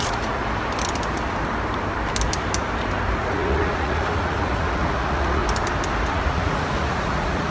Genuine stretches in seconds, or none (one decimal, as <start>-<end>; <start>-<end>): 0.4-3.2; 5.4-6.1